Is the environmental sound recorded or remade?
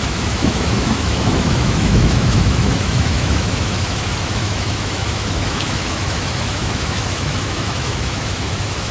remade